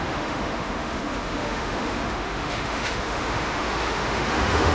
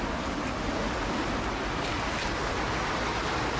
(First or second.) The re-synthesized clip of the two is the first